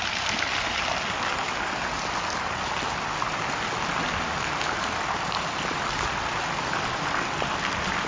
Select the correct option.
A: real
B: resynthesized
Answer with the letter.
A